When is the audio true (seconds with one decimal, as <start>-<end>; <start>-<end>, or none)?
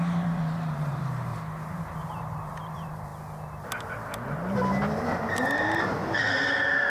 1.3-2.1; 3.1-5.8